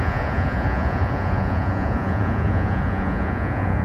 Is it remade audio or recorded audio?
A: remade